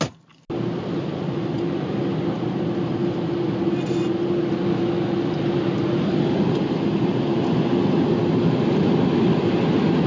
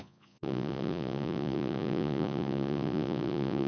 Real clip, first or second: first